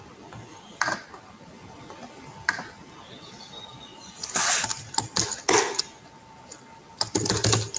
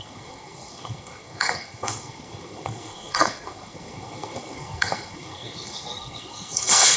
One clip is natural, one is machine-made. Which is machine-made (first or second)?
second